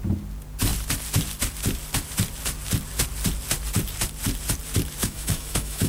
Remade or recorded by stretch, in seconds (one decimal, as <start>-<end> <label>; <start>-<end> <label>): 0.0-5.0 recorded; 5.0-5.9 remade